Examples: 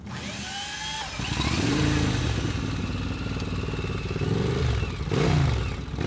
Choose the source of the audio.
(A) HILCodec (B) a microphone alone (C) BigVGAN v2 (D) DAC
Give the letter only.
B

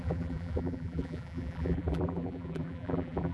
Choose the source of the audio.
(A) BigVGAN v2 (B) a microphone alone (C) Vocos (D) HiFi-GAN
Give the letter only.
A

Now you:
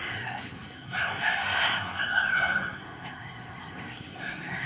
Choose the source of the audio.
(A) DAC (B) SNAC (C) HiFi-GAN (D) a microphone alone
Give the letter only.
B